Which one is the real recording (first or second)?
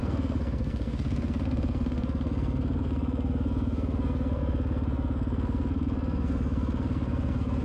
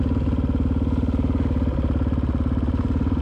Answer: second